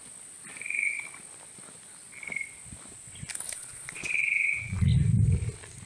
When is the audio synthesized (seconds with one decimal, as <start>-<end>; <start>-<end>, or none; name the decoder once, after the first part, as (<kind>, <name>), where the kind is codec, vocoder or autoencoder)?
3.5-4.9 (vocoder, Vocos)